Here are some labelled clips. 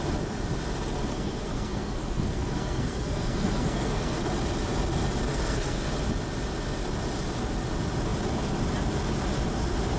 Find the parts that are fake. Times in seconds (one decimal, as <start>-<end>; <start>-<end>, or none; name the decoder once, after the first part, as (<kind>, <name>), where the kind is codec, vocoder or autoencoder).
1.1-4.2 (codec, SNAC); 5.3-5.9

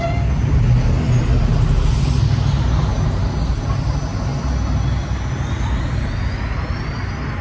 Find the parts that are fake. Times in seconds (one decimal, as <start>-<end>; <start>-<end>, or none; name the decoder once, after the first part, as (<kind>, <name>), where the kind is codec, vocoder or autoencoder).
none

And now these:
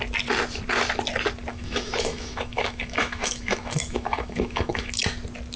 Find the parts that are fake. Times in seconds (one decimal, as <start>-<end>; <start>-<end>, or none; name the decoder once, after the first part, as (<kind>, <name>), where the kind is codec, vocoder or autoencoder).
1.5-4.9 (autoencoder, DAC-VAE)

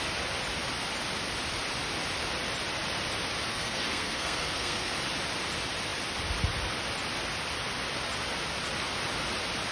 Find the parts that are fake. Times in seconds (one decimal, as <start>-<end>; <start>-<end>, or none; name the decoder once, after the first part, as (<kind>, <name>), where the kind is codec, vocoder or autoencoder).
3.5-4.9 (codec, SNAC)

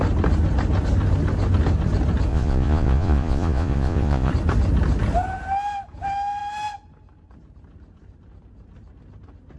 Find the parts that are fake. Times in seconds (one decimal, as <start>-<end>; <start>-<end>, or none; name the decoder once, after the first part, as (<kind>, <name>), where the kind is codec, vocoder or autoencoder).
2.3-4.3 (vocoder, Vocos)

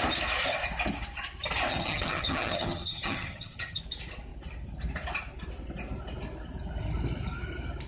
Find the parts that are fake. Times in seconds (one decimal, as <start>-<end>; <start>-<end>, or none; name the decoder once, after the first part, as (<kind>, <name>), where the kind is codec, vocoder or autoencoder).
1.7-3.8 (vocoder, HiFi-GAN)

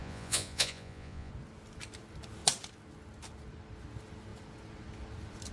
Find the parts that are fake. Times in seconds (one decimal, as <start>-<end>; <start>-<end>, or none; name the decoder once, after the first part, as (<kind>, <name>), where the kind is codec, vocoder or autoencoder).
0.0-1.3 (vocoder, Vocos)

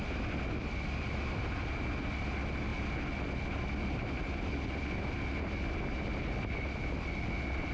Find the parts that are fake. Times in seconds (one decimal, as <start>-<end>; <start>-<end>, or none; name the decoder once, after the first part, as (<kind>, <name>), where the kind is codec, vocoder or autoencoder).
none